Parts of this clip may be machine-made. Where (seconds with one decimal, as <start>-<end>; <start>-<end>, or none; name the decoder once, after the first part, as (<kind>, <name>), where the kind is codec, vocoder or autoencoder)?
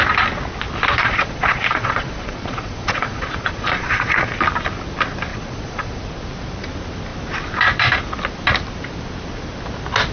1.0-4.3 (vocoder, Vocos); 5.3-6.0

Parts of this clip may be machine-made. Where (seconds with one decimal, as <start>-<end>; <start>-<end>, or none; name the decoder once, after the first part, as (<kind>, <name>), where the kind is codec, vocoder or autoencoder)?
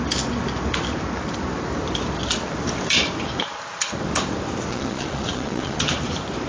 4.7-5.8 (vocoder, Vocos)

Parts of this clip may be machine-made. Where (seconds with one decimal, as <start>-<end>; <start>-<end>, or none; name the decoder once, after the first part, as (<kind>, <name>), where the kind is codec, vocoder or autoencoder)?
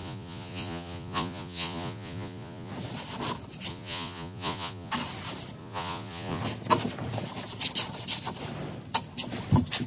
0.0-2.7 (vocoder, Vocos); 3.7-4.9; 5.6-6.4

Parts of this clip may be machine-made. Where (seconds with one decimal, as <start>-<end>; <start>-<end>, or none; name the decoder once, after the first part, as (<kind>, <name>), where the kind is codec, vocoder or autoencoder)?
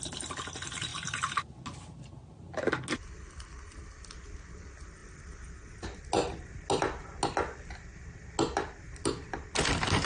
none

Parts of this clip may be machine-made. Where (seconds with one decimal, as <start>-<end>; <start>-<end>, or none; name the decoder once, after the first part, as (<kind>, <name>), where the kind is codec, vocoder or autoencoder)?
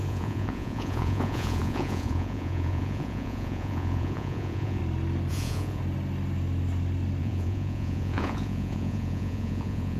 0.0-4.8 (vocoder, Vocos); 5.3-5.8; 7.2-10.0